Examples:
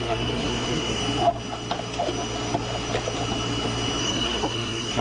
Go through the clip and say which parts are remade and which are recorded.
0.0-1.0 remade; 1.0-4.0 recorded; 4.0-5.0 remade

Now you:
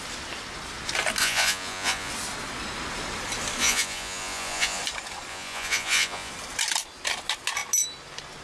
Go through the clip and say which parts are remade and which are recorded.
0.0-1.2 recorded; 1.2-2.1 remade; 2.1-3.6 recorded; 3.6-4.8 remade; 4.8-5.3 recorded; 5.3-6.3 remade; 6.3-8.4 recorded

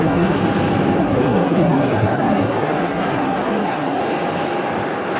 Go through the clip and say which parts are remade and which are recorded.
0.0-0.4 remade; 0.4-1.0 recorded; 1.0-4.0 remade; 4.0-5.2 recorded